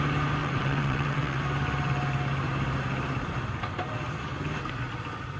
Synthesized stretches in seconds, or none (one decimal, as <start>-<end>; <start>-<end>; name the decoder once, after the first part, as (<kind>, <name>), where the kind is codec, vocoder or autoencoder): 0.4-1.4 (vocoder, WaveNeXt)